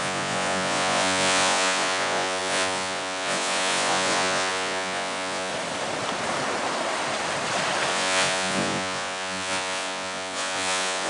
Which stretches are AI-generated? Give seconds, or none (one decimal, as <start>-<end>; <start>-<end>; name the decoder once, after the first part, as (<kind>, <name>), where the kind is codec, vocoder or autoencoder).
0.0-5.5 (vocoder, Vocos); 7.9-11.1